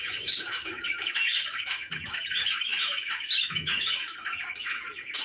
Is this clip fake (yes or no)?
yes